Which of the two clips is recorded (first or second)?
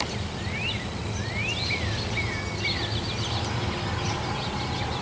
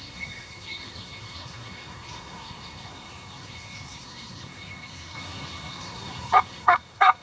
first